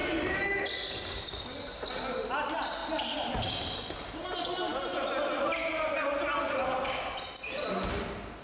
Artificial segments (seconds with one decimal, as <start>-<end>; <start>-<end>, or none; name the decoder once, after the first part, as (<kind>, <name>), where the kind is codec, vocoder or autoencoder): 0.0-0.6 (vocoder, BigVGAN v2); 2.8-3.3